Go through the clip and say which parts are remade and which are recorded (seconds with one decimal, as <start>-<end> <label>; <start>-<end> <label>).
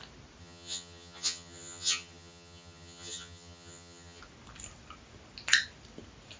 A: 0.0-0.4 recorded; 0.4-4.2 remade; 4.2-6.4 recorded